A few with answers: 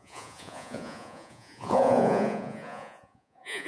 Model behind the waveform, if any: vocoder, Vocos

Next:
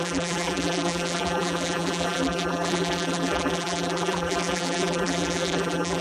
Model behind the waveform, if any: vocoder, BigVGAN v2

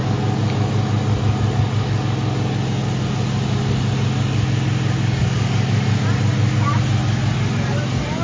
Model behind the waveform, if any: none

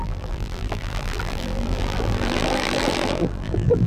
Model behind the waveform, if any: vocoder, BigVGAN v2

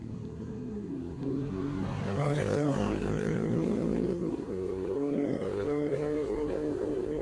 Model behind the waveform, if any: codec, SNAC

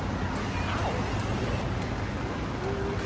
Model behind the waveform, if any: none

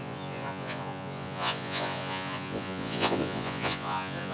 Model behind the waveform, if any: vocoder, Vocos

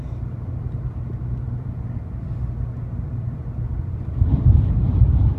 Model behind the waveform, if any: none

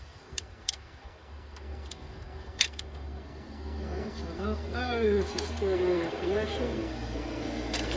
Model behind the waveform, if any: codec, SNAC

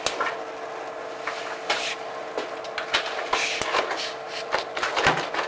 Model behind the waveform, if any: none